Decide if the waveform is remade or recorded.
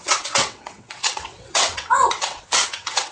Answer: remade